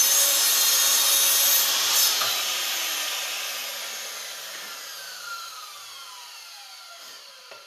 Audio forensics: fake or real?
real